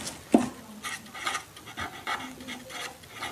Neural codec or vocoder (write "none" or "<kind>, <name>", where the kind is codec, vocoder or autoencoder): none